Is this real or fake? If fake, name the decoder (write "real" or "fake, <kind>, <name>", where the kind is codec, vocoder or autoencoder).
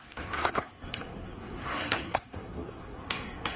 fake, codec, SNAC